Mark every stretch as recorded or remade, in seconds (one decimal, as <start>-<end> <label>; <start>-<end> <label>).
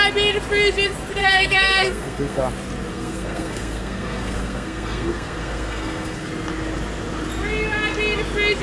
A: 0.0-1.2 recorded; 1.2-2.4 remade; 2.4-2.9 recorded; 2.9-6.3 remade; 6.3-8.6 recorded